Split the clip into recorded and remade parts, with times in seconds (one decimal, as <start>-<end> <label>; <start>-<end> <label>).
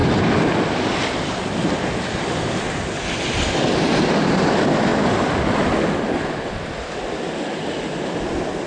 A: 0.0-8.7 recorded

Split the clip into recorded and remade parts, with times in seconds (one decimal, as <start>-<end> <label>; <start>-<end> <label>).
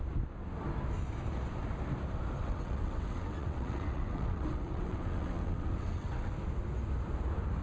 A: 0.0-2.4 recorded; 2.4-6.3 remade; 6.3-7.6 recorded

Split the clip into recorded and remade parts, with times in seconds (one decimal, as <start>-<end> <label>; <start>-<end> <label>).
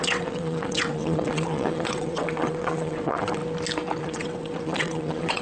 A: 0.0-3.4 remade; 3.4-4.0 recorded; 4.0-5.4 remade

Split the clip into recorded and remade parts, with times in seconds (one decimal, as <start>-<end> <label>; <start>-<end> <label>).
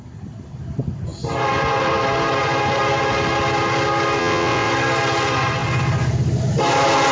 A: 0.0-4.2 recorded; 4.2-4.7 remade; 4.7-7.1 recorded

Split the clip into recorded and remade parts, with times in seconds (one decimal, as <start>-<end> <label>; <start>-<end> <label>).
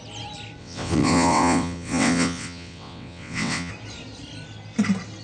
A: 0.0-0.6 recorded; 0.6-3.7 remade; 3.7-5.2 recorded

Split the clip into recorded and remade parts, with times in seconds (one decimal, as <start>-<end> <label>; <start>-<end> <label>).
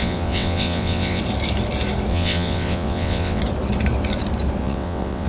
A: 0.0-1.2 remade; 1.2-2.1 recorded; 2.1-3.4 remade; 3.4-4.6 recorded; 4.6-5.3 remade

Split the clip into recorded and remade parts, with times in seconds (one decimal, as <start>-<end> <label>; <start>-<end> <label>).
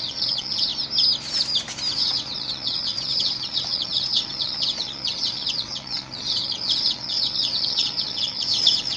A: 0.0-0.7 remade; 0.7-1.9 recorded; 1.9-9.0 remade